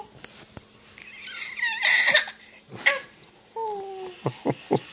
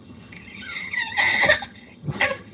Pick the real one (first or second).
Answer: first